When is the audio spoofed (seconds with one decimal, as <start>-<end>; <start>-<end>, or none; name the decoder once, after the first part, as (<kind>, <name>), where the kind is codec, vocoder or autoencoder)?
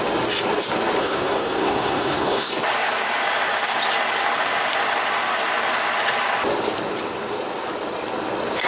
1.0-2.5 (codec, SNAC)